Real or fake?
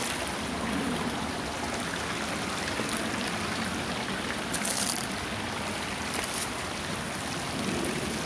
real